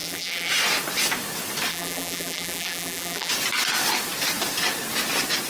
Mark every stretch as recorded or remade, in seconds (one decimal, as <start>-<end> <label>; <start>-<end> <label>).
0.0-0.5 remade; 0.5-1.7 recorded; 1.7-3.3 remade; 3.3-5.5 recorded